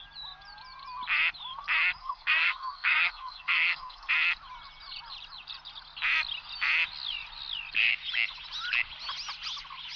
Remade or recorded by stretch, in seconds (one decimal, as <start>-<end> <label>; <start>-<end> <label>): 0.0-2.0 recorded; 2.0-4.1 remade; 4.1-10.0 recorded